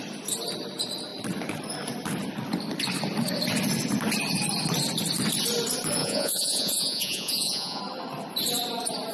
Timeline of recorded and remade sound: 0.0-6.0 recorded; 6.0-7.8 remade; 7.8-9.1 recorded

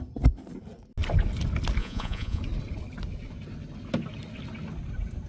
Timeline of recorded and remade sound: 0.0-1.8 recorded; 1.8-2.4 remade; 2.4-5.3 recorded